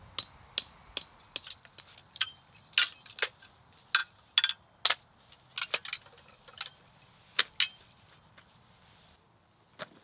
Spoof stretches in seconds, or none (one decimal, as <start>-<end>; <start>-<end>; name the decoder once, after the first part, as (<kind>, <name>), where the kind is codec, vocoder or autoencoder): none